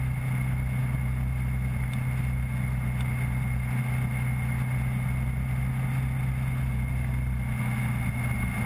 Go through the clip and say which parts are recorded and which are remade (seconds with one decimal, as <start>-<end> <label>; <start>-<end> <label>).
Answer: 0.0-8.7 recorded